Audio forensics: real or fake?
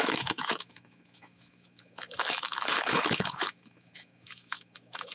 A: fake